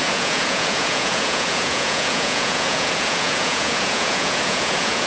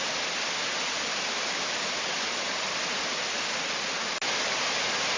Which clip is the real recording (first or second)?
second